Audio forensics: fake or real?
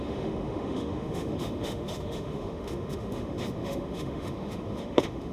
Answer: fake